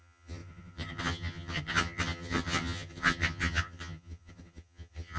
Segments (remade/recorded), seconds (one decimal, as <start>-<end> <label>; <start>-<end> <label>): 0.0-5.2 remade